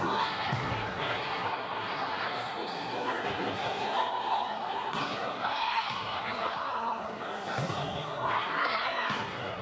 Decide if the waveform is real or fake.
fake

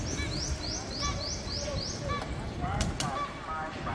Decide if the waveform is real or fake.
real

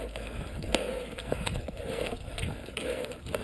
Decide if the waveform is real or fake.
fake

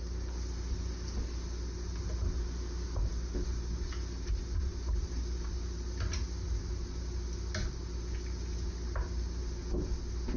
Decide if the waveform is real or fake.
real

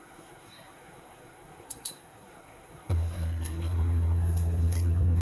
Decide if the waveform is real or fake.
fake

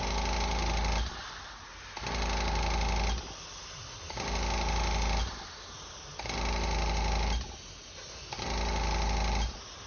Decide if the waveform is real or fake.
real